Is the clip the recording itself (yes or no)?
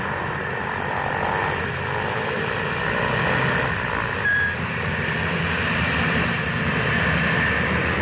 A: yes